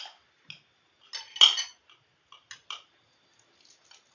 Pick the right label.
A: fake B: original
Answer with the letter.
B